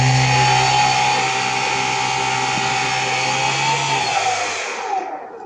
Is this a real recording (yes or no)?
yes